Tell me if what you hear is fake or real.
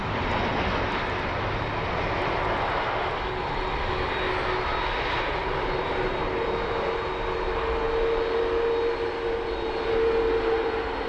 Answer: real